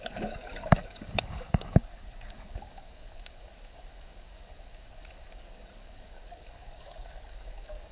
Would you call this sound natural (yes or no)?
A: no